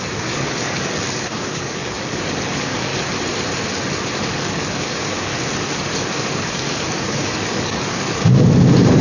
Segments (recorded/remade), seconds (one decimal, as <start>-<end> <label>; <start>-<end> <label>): 0.0-2.9 remade; 2.9-4.2 recorded; 4.2-5.3 remade; 5.3-5.9 recorded; 5.9-9.0 remade